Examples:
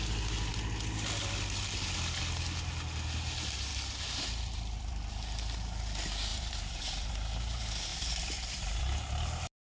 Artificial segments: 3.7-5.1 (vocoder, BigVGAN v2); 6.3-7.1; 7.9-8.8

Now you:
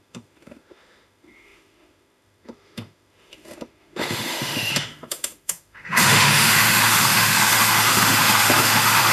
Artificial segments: 0.0-9.1 (autoencoder, DAC-VAE)

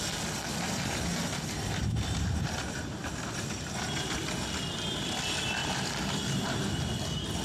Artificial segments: 0.5-4.1 (vocoder, BigVGAN v2); 5.6-6.7

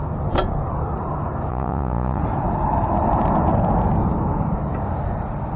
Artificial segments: 1.5-2.2 (vocoder, Vocos)

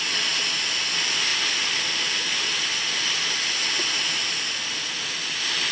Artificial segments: none

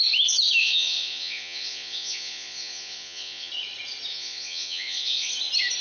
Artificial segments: 0.6-3.5 (vocoder, Vocos); 4.1-5.3

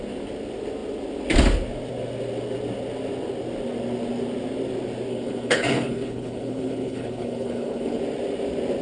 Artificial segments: 5.1-8.0 (codec, HILCodec)